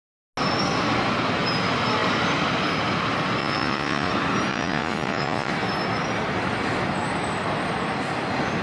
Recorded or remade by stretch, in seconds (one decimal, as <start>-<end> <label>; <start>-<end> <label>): 0.0-3.4 recorded; 3.4-4.1 remade; 4.1-4.5 recorded; 4.5-5.5 remade; 5.5-8.6 recorded